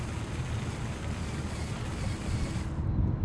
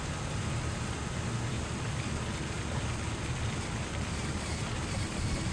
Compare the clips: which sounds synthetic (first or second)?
second